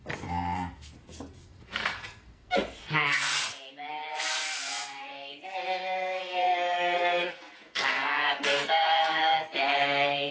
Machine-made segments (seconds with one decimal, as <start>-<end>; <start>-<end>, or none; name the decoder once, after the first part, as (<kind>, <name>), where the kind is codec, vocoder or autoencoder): 0.0-3.3 (codec, SNAC); 3.9-10.3

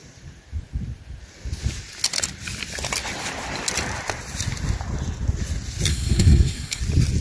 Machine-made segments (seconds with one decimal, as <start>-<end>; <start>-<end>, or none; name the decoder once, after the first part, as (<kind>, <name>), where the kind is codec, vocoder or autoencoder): 5.9-6.8 (codec, SNAC)

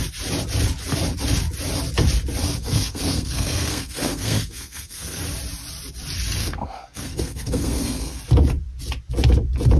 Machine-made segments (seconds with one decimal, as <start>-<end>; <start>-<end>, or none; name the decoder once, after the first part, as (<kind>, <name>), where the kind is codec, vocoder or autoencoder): 2.6-5.2 (codec, SNAC); 6.4-8.2

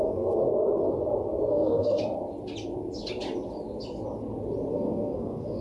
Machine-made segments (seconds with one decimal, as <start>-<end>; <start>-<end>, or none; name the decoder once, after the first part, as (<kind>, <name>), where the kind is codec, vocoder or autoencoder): 0.0-0.4 (codec, SNAC); 1.5-2.0; 4.7-5.6

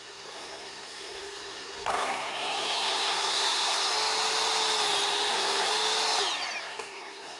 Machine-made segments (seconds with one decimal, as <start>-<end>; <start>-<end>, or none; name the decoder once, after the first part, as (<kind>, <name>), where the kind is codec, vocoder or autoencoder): 0.0-3.9 (codec, SNAC); 5.3-5.7; 6.6-7.4

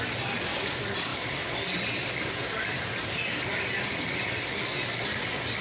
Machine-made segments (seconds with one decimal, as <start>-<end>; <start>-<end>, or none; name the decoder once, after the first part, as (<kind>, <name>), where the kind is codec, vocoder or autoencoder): none

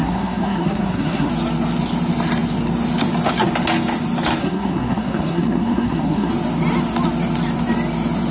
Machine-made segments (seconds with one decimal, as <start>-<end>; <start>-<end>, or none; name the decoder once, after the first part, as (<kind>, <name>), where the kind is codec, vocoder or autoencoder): 0.0-1.3 (codec, SNAC); 4.4-6.3

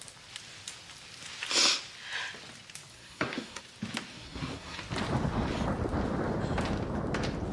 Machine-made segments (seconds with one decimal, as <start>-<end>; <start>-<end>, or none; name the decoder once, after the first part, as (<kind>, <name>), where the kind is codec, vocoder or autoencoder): 2.9-3.6 (codec, SNAC); 4.1-4.8